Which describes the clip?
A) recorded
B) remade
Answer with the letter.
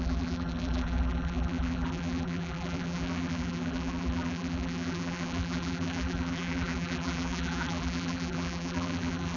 B